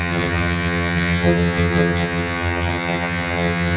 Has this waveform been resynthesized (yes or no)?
yes